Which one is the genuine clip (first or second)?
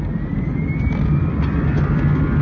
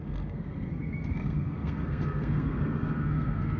first